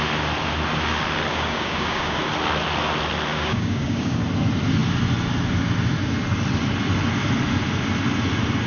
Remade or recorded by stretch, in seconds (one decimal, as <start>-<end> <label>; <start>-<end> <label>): 0.0-1.3 recorded; 1.3-2.2 remade; 2.2-3.3 recorded; 3.3-4.2 remade; 4.2-8.7 recorded